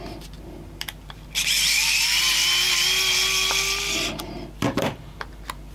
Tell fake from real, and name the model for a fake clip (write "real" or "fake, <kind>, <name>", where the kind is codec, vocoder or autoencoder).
fake, vocoder, BigVGAN v2